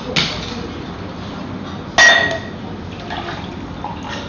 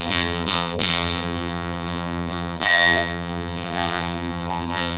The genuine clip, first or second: first